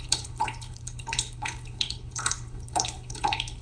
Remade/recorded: remade